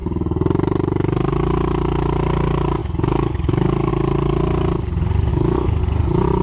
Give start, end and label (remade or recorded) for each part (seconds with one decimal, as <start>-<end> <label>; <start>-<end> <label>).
0.0-2.8 recorded; 2.8-3.9 remade; 3.9-5.3 recorded; 5.3-5.8 remade; 5.8-6.4 recorded